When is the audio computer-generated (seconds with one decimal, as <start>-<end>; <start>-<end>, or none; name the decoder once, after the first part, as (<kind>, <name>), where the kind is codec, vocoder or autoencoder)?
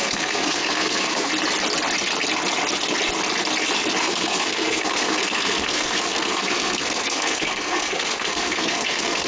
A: 0.0-1.3 (codec, SNAC); 4.0-9.3